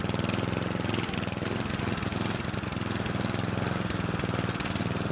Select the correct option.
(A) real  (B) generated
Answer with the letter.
A